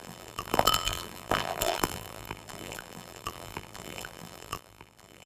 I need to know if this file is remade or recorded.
remade